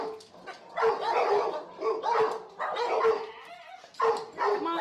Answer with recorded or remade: recorded